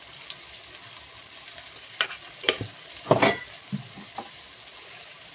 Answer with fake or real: fake